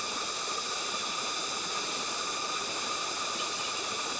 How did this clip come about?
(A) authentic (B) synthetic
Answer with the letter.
A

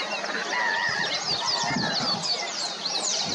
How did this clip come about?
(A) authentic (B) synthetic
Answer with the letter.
A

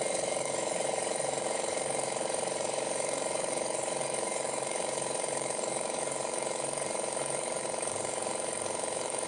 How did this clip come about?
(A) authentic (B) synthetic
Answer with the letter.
B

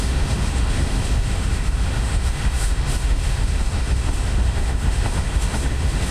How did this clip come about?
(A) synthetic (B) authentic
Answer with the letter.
A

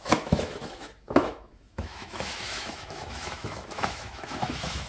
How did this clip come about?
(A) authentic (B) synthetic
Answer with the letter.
B